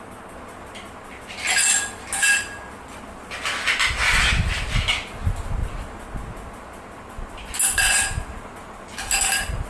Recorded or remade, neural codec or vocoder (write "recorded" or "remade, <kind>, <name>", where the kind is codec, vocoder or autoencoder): recorded